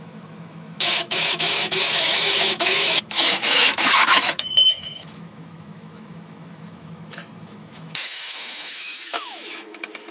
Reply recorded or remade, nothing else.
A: remade